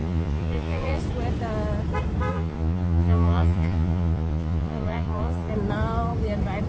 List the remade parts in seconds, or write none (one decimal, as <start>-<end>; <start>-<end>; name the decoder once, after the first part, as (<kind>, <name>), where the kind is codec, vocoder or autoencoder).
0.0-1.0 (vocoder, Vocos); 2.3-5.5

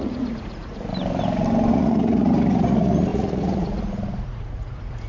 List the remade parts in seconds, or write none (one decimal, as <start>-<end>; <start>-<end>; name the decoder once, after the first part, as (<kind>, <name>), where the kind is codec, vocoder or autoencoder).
0.0-0.9 (vocoder, Vocos); 1.7-5.1

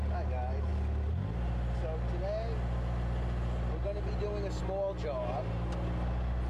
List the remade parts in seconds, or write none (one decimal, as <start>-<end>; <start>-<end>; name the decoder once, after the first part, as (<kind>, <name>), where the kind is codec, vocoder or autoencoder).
none

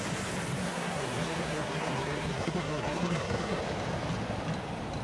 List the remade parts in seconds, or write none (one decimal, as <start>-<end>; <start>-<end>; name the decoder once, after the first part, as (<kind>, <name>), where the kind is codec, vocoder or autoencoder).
0.6-3.6 (codec, SNAC)

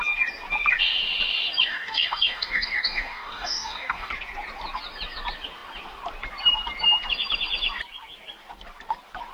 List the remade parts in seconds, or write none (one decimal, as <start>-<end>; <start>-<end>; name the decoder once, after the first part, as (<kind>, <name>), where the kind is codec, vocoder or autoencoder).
1.7-4.1 (codec, DAC)

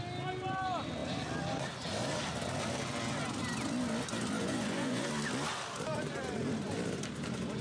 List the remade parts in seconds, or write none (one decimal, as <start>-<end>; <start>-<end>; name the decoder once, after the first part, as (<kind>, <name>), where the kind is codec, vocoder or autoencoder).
4.4-5.1 (vocoder, Vocos)

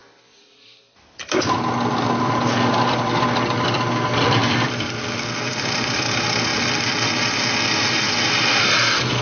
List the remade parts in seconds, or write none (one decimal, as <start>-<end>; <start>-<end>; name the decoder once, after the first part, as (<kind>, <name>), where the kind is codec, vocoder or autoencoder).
0.0-6.5 (vocoder, BigVGAN v2); 8.1-9.2